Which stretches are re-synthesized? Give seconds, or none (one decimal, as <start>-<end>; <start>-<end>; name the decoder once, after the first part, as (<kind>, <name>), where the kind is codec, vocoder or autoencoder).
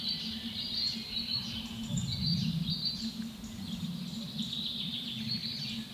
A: none